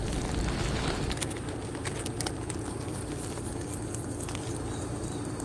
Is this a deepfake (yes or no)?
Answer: no